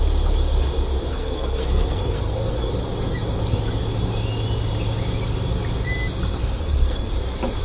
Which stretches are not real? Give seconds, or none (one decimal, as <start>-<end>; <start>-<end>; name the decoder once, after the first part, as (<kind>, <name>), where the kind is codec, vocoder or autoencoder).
1.1-2.7 (codec, SNAC); 6.3-7.1